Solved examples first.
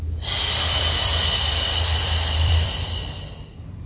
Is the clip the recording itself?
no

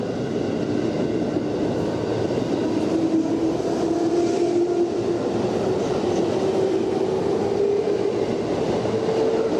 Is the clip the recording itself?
yes